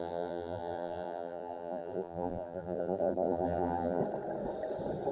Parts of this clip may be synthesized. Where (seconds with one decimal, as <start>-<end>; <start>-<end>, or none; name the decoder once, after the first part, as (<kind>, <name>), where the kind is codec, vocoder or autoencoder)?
0.0-4.0 (vocoder, BigVGAN v2)